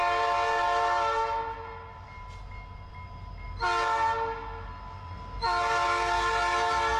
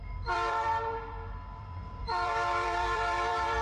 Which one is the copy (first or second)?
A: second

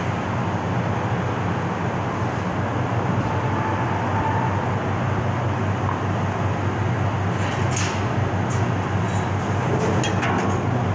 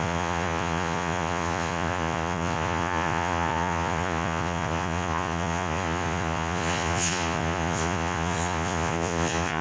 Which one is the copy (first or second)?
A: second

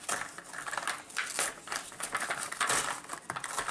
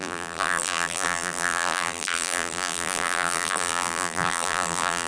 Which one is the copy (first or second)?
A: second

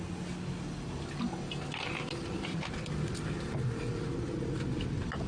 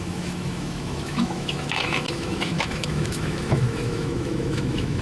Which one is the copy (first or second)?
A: second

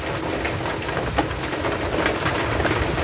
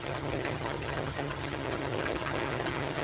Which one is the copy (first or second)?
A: second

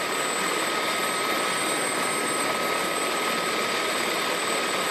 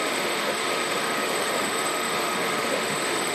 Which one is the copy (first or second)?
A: second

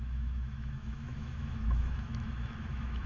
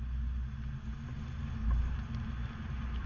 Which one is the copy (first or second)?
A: first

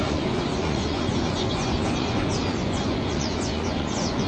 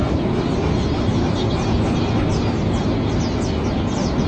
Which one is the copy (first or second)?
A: first